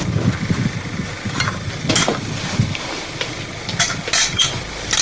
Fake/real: real